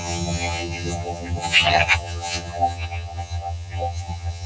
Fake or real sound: fake